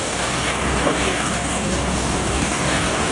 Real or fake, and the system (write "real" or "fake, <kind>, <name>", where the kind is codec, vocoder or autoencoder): fake, codec, DAC